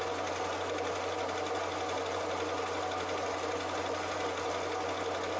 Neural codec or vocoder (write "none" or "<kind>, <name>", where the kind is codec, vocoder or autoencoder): none